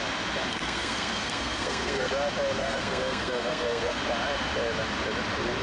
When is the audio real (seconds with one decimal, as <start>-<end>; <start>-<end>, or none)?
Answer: 0.0-0.5; 2.1-2.6; 4.0-5.6

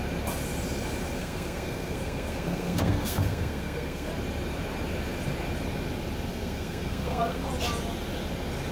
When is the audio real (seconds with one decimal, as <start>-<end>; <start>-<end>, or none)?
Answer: 0.0-1.2; 4.1-6.3; 7.5-8.7

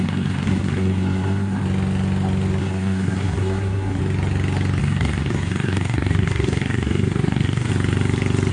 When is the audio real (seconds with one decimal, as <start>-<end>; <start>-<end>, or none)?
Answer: 1.6-2.6; 4.0-4.8; 7.7-8.5

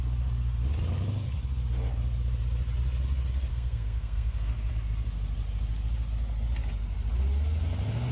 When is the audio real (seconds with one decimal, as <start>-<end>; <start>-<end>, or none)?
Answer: 0.0-3.5; 4.7-8.1

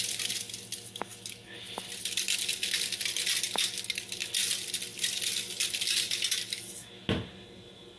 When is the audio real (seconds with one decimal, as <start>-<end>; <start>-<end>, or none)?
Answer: 0.0-8.0

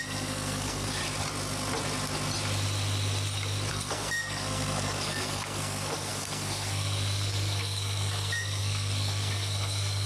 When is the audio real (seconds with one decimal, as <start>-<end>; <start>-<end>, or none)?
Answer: 1.0-3.7